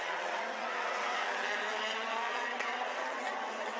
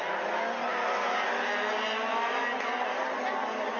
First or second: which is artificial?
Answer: first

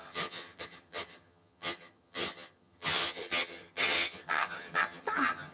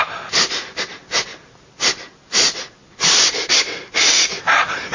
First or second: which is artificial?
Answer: first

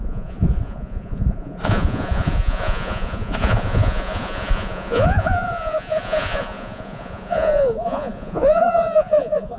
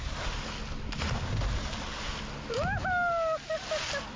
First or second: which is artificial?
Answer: first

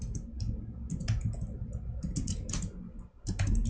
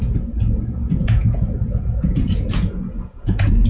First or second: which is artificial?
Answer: second